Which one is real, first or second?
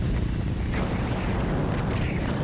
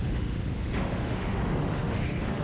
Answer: first